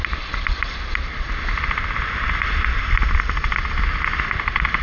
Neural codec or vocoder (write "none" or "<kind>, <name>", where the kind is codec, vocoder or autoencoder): none